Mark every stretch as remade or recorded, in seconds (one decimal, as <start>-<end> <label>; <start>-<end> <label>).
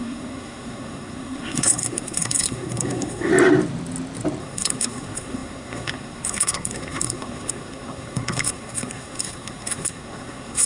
0.0-3.3 remade; 3.3-4.4 recorded; 4.4-10.7 remade